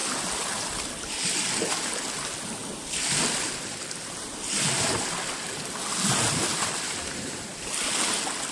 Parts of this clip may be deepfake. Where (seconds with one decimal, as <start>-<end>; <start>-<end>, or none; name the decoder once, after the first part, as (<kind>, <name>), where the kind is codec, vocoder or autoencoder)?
2.6-4.9 (vocoder, BigVGAN v2); 6.5-8.0